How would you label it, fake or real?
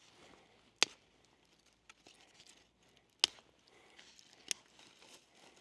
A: real